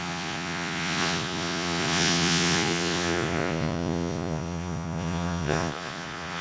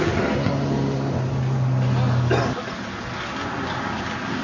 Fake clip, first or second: first